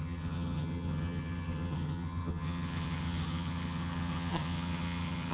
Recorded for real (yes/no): no